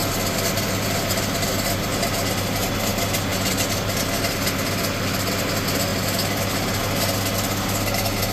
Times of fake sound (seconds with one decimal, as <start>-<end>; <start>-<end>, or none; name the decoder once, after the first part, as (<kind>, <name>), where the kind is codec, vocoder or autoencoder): none